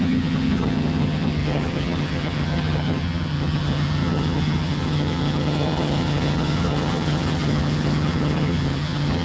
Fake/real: fake